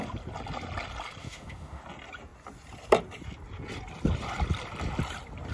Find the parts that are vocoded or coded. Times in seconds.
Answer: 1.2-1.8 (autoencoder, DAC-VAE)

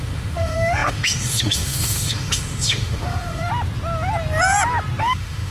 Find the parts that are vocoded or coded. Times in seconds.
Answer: 0.0-3.5 (autoencoder, DAC-VAE); 5.0-5.5

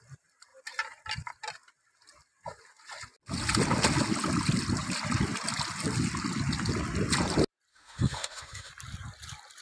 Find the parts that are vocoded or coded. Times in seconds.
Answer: 7.7-8.7 (autoencoder, DAC-VAE)